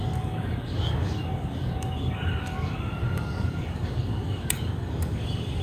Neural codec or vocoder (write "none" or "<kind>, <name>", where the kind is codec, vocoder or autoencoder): codec, DAC